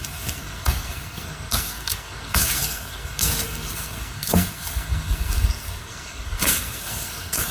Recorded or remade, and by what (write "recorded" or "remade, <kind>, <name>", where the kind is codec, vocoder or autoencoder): remade, codec, SNAC